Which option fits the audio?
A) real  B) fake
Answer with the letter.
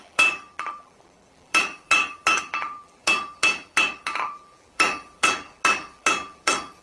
B